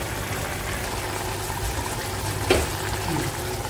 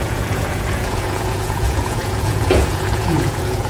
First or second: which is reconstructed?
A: second